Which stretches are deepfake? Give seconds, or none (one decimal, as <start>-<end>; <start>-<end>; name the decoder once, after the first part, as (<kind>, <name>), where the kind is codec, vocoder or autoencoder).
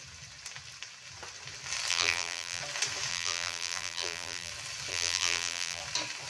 1.9-2.6 (vocoder, BigVGAN v2); 3.1-4.5; 4.9-5.8